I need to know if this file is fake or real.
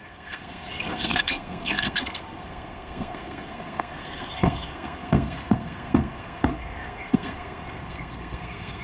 fake